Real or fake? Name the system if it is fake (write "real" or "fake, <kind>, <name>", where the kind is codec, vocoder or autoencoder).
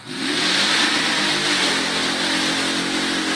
real